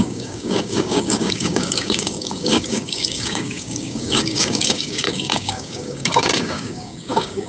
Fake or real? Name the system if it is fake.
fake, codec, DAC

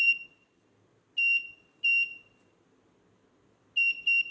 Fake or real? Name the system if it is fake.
real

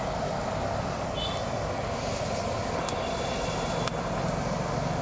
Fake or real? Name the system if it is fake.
real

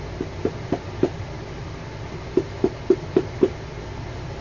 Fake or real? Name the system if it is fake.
real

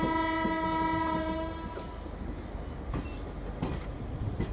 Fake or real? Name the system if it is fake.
real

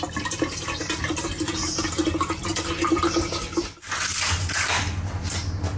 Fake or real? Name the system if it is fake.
real